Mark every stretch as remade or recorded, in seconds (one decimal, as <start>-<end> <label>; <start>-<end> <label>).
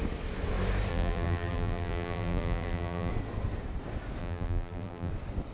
0.0-0.9 recorded; 0.9-3.1 remade; 3.1-4.2 recorded; 4.2-5.1 remade; 5.1-5.5 recorded